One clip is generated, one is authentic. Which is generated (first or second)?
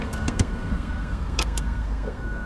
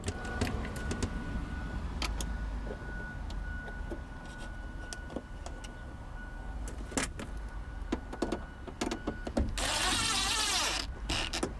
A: first